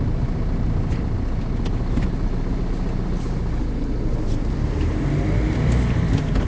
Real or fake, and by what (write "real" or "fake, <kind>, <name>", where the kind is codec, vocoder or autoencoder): real